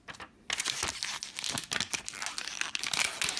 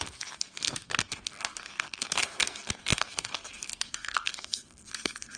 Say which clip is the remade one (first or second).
second